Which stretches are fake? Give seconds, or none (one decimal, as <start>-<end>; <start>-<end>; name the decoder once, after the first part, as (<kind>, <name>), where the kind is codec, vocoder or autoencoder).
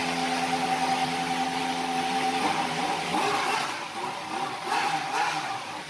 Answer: 1.6-3.1 (vocoder, BigVGAN v2); 5.3-5.9